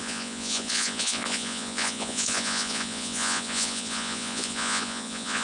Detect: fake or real fake